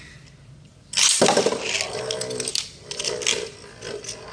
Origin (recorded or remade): recorded